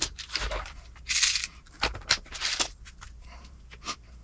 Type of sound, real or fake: fake